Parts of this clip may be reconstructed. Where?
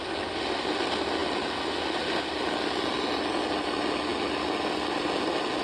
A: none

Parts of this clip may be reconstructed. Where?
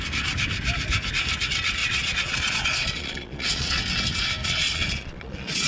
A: 1.8-3.8; 4.4-5.7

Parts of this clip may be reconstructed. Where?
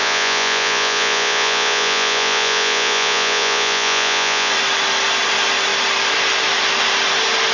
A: 0.0-4.5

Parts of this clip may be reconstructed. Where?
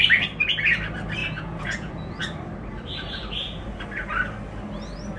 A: 1.2-1.9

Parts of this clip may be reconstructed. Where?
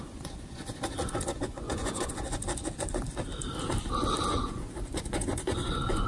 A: 0.0-2.4; 4.3-6.1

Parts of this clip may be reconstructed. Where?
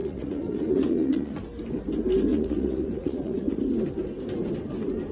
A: 0.0-1.4; 2.3-3.6